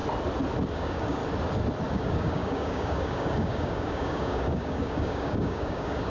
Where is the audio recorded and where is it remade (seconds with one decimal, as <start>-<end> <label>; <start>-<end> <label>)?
0.0-0.7 recorded; 0.7-1.2 remade; 1.2-1.9 recorded; 1.9-6.1 remade